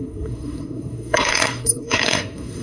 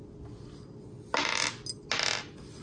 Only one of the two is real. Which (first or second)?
second